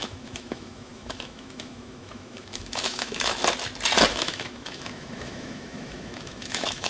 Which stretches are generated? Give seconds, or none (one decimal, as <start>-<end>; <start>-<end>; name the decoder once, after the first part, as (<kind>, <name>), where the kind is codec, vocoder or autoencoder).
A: 0.0-3.4 (autoencoder, DAC-VAE); 4.1-6.9